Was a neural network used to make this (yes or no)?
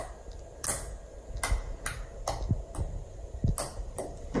no